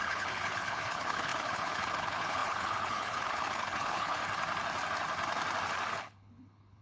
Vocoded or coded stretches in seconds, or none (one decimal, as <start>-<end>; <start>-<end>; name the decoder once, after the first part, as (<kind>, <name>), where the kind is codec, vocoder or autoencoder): 0.0-4.2 (codec, HILCodec); 5.9-6.8